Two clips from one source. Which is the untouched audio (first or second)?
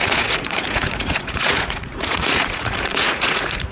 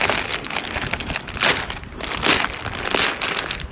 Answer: second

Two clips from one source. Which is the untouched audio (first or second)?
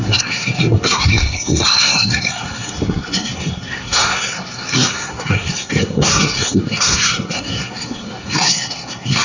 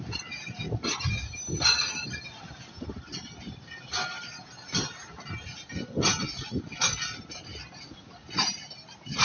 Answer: second